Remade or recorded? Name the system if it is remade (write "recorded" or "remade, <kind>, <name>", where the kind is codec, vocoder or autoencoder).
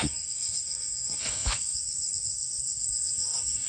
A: remade, codec, SNAC